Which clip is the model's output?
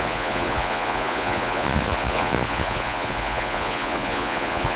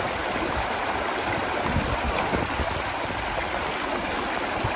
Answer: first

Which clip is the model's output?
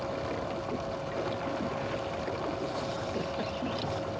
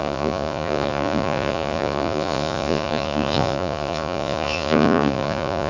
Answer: second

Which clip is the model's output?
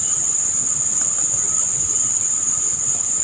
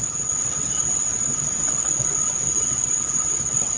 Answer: second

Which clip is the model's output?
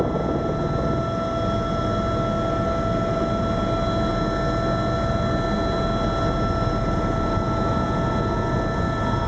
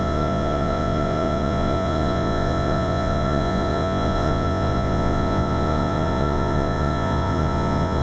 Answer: second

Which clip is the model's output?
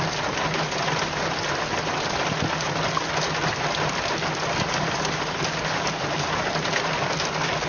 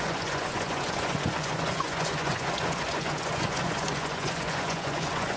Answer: second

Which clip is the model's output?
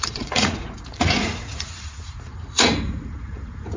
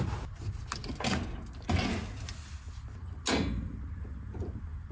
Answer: first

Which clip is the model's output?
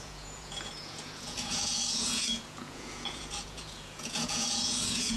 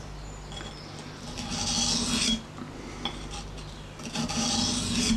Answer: first